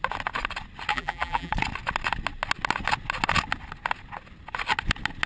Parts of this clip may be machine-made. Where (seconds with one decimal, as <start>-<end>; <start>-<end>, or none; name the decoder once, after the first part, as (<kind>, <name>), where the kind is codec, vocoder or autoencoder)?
0.9-1.5 (vocoder, BigVGAN v2)

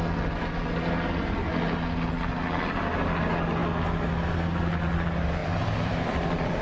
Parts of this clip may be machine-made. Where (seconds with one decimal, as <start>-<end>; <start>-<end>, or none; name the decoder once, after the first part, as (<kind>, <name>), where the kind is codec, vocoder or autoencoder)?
5.4-6.6 (vocoder, BigVGAN v2)

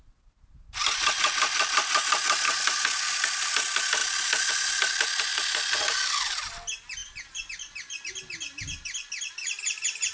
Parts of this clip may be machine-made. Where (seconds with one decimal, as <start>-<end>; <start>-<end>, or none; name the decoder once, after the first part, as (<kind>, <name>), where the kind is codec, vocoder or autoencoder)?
4.0-4.5 (vocoder, BigVGAN v2); 5.3-6.4

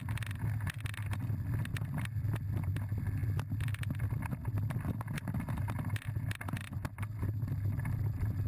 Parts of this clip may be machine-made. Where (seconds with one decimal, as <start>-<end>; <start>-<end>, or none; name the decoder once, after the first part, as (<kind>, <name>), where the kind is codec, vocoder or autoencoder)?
none

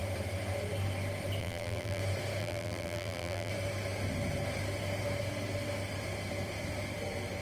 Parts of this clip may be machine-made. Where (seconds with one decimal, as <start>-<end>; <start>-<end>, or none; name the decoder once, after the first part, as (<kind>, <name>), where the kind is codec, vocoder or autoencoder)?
1.4-2.0 (vocoder, BigVGAN v2); 2.4-3.5

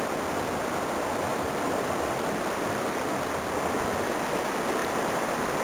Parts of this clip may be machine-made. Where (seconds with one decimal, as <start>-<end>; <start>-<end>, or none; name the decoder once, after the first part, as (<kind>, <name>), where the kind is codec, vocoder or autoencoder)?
1.3-3.0 (vocoder, BigVGAN v2); 4.8-5.6

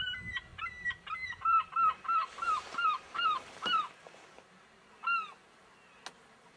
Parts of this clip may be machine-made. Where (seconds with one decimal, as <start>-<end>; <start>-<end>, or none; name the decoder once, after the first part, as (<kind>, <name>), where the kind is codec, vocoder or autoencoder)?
0.5-4.0 (vocoder, BigVGAN v2)